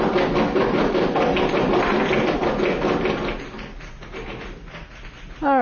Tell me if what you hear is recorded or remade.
recorded